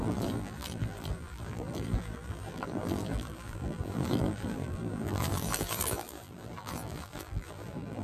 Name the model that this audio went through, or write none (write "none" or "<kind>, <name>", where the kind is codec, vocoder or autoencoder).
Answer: vocoder, BigVGAN v2